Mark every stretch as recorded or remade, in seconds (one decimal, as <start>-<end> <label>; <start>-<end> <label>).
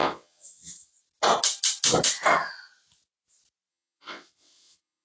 0.0-0.9 remade; 0.9-3.7 recorded; 3.7-5.0 remade